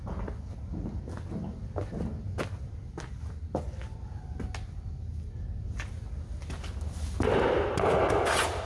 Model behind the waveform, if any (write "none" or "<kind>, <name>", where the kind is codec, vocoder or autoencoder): none